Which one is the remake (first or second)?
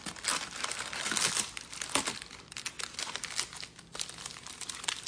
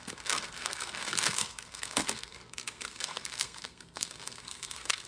second